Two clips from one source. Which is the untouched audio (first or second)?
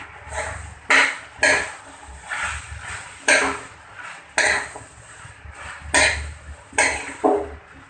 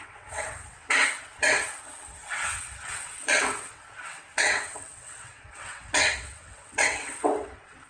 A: first